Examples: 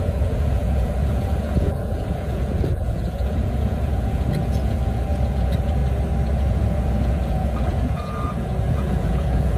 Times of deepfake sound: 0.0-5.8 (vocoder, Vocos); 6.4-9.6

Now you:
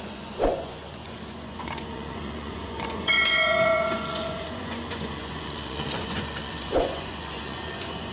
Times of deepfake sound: 0.0-8.1 (vocoder, Vocos)

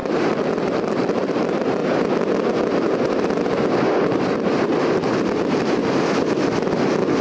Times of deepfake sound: 0.0-1.8 (vocoder, BigVGAN v2); 4.2-5.8

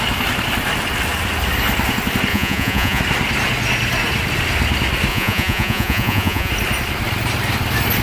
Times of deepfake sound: 2.3-3.0 (vocoder, Vocos); 5.1-6.5

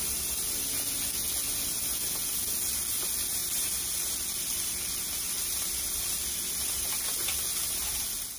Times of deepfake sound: none

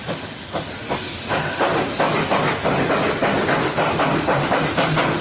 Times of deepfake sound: none